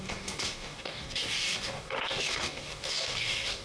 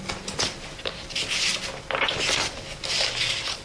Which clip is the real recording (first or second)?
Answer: second